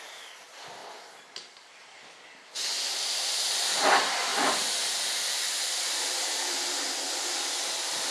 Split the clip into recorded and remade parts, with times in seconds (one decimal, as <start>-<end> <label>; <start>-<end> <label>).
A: 0.0-0.8 remade; 0.8-3.7 recorded; 3.7-4.3 remade; 4.3-8.1 recorded